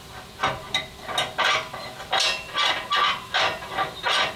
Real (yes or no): yes